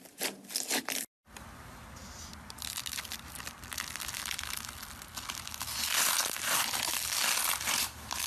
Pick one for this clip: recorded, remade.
recorded